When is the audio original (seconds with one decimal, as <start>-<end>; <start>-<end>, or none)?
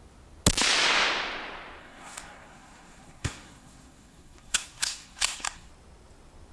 0.0-1.8; 5.7-6.5